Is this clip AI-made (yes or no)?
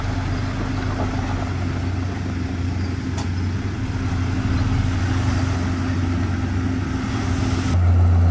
no